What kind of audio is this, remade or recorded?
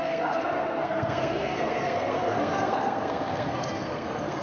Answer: remade